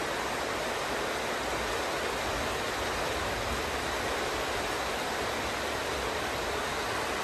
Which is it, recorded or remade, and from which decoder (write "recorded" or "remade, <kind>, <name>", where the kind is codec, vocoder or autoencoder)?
recorded